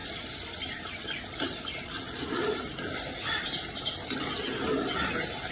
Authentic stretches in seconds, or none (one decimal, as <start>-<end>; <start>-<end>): 1.2-5.5